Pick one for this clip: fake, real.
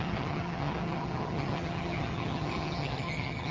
fake